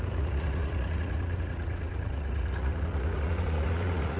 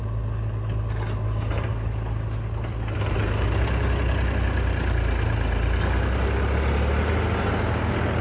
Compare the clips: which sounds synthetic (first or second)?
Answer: first